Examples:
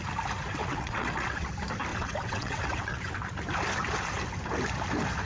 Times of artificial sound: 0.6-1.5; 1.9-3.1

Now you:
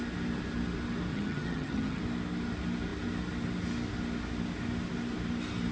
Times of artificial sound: 1.1-2.0

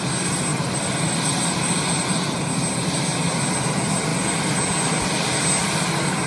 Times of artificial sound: 0.5-1.9

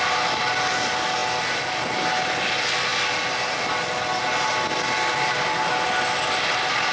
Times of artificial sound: none

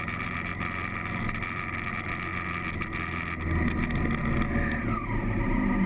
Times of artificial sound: none